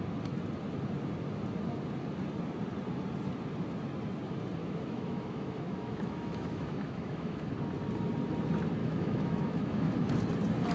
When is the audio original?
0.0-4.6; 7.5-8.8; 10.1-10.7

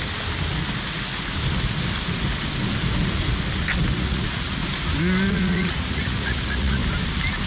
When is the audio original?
0.0-4.0; 4.6-5.3; 6.8-7.5